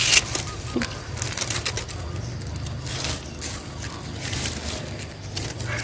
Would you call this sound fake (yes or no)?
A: no